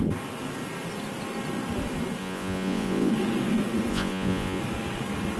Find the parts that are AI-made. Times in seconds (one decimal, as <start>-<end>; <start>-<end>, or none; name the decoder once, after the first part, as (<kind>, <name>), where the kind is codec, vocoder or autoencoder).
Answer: 2.2-3.1 (vocoder, Vocos); 3.9-4.6